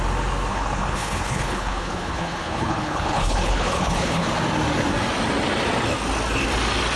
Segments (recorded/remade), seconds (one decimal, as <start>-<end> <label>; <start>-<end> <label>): 0.0-0.5 recorded; 0.5-4.3 remade; 4.3-7.0 recorded